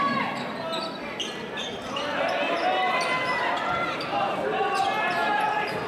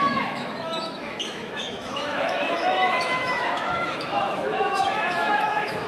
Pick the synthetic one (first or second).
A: second